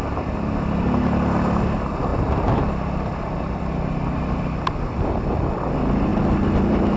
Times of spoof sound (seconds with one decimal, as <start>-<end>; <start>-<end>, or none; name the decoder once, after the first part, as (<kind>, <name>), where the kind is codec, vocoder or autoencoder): none